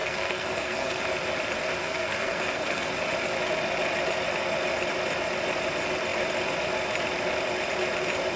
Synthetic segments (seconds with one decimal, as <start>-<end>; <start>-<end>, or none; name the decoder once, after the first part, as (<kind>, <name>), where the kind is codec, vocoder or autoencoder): 0.0-1.0 (codec, SNAC); 1.8-2.9